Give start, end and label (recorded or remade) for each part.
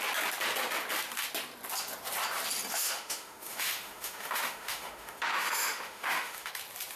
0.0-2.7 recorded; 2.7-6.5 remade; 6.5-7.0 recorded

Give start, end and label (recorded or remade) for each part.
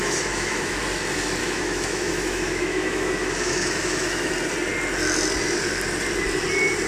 0.0-0.8 remade; 0.8-1.4 recorded; 1.4-4.3 remade; 4.3-6.9 recorded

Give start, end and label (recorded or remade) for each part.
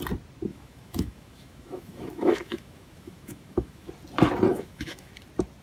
0.0-0.5 recorded; 0.5-3.9 remade; 3.9-4.5 recorded; 4.5-5.1 remade; 5.1-5.6 recorded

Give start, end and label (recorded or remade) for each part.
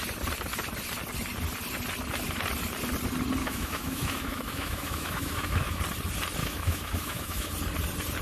0.0-3.4 recorded; 3.4-5.8 remade; 5.8-6.4 recorded; 6.4-7.5 remade; 7.5-8.2 recorded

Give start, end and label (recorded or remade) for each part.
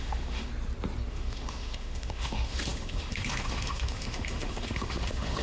0.0-0.5 remade; 0.5-1.1 recorded; 1.1-5.4 remade